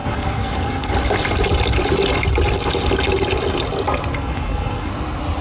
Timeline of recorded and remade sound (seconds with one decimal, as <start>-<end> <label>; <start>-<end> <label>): 0.0-0.9 remade; 0.9-4.1 recorded; 4.1-4.9 remade; 4.9-5.4 recorded